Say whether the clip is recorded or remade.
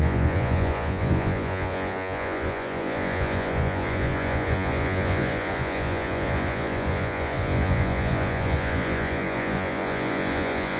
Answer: remade